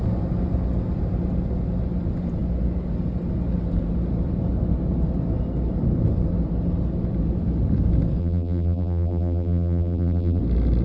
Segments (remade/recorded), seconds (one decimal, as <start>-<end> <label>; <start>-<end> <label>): 0.0-8.2 recorded; 8.2-10.4 remade; 10.4-10.8 recorded